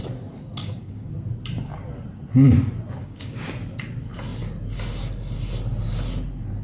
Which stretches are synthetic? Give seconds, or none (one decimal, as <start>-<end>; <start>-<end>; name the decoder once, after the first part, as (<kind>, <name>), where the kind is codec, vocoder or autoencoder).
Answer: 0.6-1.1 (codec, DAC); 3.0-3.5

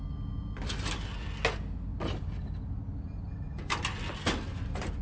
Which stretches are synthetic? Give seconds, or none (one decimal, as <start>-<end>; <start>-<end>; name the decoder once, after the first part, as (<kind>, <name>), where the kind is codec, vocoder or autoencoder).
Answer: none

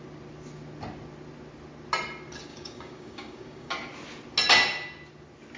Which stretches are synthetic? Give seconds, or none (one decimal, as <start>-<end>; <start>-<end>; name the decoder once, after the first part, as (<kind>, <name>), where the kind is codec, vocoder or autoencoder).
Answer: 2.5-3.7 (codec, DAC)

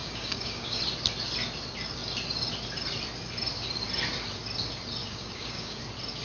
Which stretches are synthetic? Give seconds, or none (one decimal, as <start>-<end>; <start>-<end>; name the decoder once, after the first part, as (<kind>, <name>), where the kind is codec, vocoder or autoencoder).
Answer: 0.0-0.8 (codec, DAC); 5.0-5.8